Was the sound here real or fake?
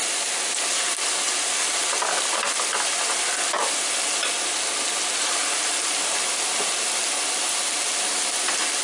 real